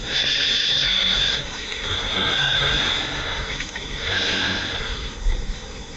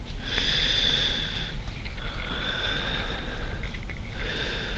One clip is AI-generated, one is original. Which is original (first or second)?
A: second